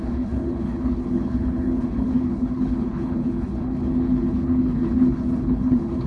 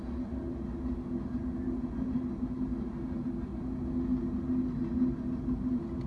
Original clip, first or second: second